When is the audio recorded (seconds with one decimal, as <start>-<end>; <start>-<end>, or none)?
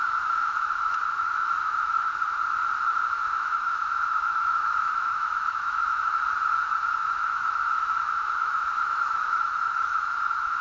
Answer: 2.1-3.1; 6.1-6.9